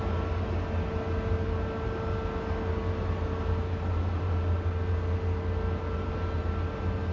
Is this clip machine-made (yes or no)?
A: no